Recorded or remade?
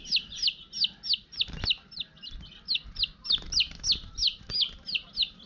recorded